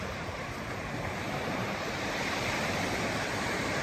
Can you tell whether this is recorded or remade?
remade